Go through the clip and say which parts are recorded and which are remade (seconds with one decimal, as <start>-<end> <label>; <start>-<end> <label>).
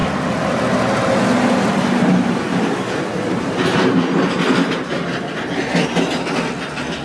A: 0.0-7.0 recorded